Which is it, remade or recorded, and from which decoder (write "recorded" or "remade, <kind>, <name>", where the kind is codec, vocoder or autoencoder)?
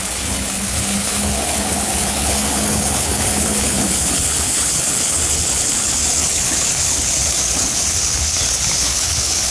remade, codec, HILCodec